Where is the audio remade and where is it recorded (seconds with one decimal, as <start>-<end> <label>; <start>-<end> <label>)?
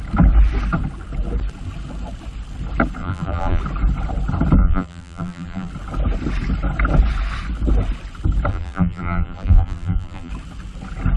0.0-3.0 recorded; 3.0-3.6 remade; 3.6-4.6 recorded; 4.6-5.7 remade; 5.7-8.5 recorded; 8.5-10.3 remade; 10.3-11.2 recorded